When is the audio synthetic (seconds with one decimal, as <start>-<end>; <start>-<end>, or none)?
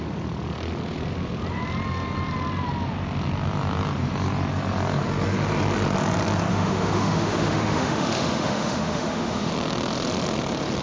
6.5-9.5